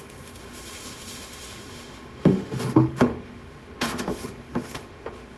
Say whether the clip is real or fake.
fake